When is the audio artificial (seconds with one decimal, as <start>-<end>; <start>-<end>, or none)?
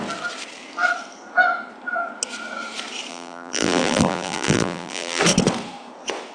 3.1-5.2